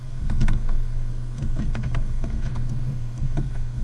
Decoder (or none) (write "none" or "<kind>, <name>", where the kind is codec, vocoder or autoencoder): codec, SNAC